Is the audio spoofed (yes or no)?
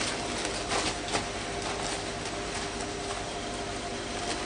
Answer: no